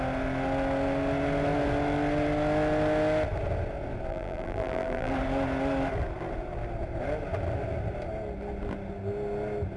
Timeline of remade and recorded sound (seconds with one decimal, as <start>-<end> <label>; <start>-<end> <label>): 0.0-4.1 recorded; 4.1-5.1 remade; 5.1-9.8 recorded